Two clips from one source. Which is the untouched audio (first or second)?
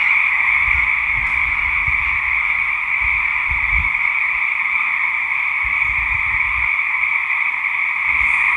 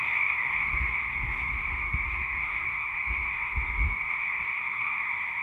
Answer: first